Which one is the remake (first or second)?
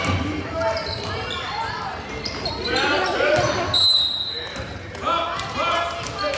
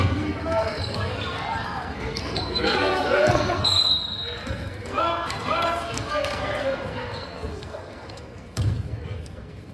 second